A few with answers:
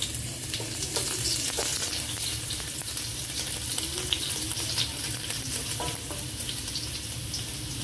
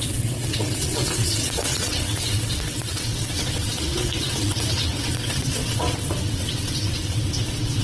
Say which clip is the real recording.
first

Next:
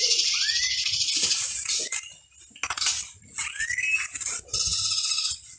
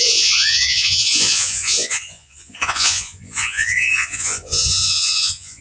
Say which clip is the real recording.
first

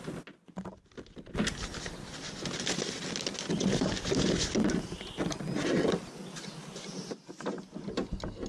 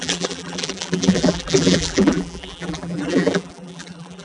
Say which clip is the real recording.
first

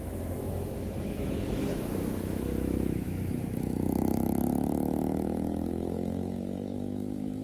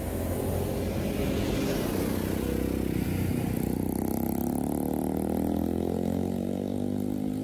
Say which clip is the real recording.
second